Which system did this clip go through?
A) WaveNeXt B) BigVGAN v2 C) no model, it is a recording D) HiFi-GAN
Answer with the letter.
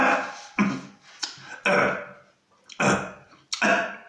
C